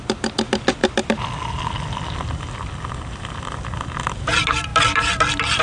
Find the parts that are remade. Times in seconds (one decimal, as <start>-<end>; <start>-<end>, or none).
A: none